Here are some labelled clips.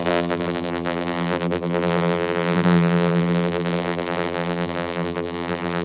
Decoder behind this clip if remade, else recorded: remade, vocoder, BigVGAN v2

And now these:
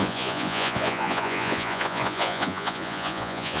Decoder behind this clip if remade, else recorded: remade, vocoder, Vocos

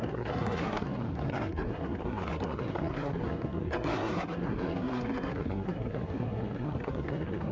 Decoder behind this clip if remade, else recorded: remade, codec, SNAC